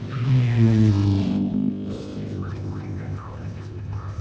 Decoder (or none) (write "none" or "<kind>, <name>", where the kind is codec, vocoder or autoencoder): codec, ZipCodec